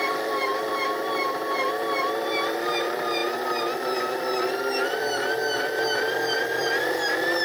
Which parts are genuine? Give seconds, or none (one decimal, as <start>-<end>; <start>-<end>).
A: none